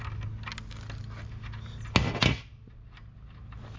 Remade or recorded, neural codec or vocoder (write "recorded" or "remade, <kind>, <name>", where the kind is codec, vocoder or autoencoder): recorded